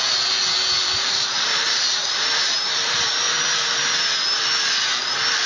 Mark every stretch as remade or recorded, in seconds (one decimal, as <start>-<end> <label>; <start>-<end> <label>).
0.0-0.8 recorded; 0.8-3.1 remade; 3.1-5.5 recorded